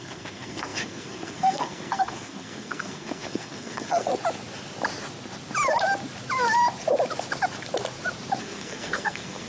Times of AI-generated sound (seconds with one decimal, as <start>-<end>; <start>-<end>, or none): 0.0-4.1; 8.4-9.5